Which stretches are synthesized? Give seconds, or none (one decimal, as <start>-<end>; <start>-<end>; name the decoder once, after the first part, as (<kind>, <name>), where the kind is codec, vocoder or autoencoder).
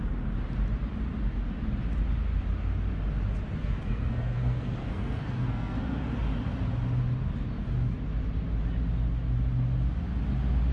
3.6-6.1 (codec, SNAC)